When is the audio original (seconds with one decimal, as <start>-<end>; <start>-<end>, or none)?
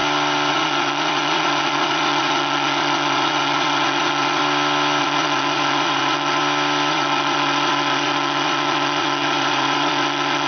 0.0-0.5; 4.4-5.0; 6.4-6.9